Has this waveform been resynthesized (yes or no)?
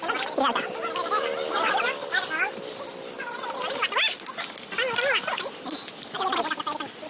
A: no